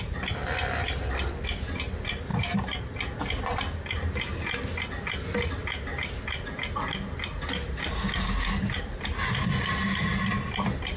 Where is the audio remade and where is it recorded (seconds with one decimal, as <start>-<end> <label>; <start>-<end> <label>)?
0.0-11.0 recorded